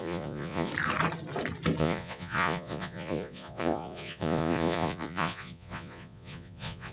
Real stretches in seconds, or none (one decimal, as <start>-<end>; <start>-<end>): 0.7-1.8